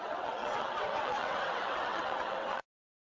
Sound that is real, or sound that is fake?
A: fake